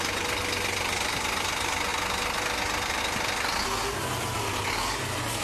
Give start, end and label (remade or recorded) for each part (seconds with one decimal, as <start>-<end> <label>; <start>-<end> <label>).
0.0-5.4 recorded